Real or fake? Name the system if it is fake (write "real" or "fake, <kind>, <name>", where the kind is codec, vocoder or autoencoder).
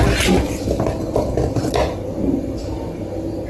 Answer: real